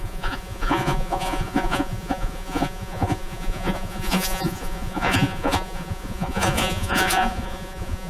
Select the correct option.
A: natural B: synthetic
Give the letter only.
B